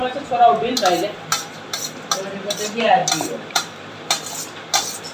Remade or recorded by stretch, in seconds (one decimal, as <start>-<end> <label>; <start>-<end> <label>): 0.0-5.1 recorded